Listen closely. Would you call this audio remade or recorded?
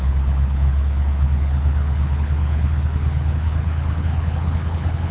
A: remade